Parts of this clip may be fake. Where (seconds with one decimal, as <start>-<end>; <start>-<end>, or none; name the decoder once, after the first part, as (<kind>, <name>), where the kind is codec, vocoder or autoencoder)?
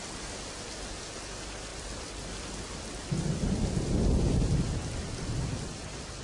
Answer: 1.7-5.4 (vocoder, BigVGAN v2)